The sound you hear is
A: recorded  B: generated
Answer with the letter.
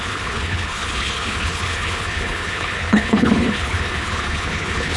B